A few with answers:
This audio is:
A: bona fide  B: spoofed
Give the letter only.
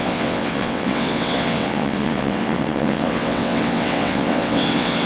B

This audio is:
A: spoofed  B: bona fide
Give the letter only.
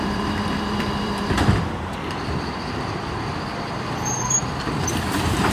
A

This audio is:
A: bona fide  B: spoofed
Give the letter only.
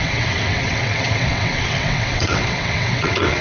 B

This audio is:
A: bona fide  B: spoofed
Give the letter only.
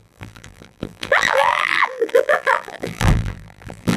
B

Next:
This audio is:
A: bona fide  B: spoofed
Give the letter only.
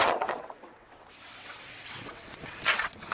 B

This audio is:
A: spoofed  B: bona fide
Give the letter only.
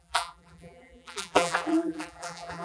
A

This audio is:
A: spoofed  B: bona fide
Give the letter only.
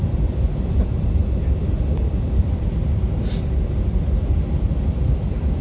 A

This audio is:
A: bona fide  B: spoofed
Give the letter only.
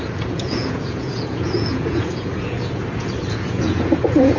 B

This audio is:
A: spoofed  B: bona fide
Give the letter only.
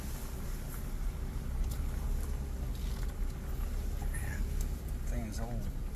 B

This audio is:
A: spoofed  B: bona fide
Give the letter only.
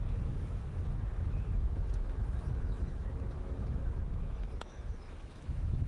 A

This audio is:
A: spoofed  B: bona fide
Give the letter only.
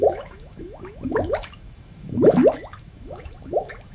A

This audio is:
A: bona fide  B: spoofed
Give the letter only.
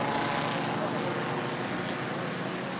A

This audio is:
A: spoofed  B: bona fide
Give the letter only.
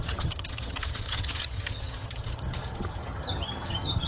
A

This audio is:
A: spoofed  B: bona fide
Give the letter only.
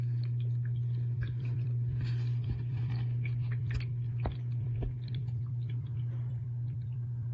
A